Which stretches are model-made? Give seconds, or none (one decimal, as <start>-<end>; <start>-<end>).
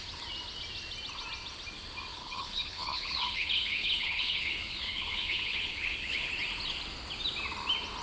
2.1-6.3